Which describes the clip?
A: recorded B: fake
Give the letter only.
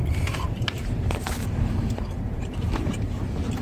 B